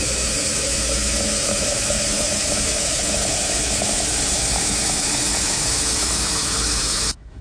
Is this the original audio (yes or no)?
no